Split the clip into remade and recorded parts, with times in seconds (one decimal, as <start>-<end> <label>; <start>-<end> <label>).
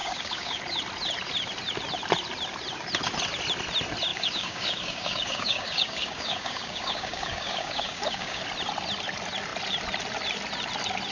0.0-0.6 remade; 0.6-4.1 recorded; 4.1-8.4 remade; 8.4-11.1 recorded